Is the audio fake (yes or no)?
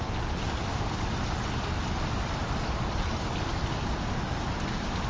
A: no